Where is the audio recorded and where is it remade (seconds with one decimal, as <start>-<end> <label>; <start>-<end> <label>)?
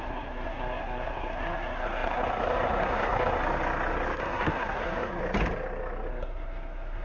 0.0-3.4 remade; 3.4-4.2 recorded; 4.2-5.2 remade; 5.2-6.1 recorded; 6.1-7.0 remade